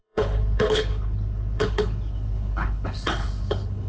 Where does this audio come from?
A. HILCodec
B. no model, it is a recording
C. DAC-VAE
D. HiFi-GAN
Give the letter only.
A